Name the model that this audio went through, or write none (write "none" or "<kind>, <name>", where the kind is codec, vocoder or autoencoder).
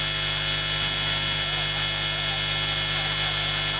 none